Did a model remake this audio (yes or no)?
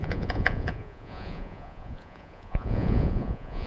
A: yes